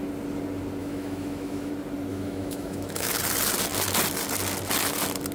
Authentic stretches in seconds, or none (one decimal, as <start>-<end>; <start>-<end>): 0.0-0.8; 1.7-2.1; 3.2-5.3